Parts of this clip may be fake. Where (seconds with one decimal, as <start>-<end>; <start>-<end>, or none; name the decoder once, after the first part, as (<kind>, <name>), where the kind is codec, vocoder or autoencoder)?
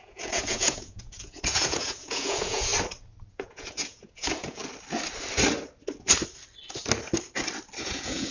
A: 0.0-2.7 (vocoder, Vocos); 3.3-4.6; 7.8-8.3